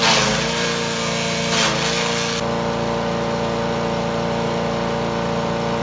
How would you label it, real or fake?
real